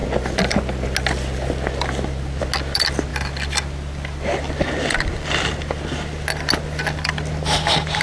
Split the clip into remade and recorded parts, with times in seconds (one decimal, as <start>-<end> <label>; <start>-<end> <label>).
0.0-8.0 recorded